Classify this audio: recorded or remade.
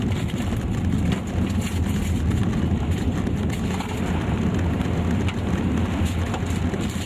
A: recorded